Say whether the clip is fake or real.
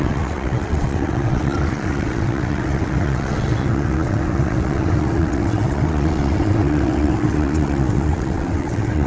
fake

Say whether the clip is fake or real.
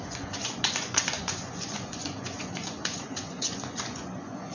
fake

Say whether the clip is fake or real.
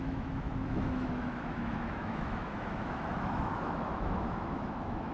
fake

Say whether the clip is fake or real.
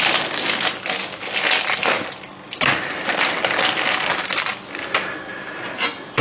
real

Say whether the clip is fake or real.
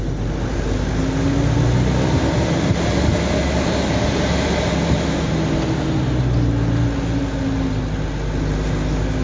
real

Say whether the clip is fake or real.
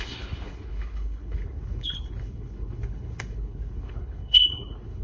fake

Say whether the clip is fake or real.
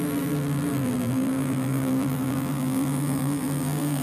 fake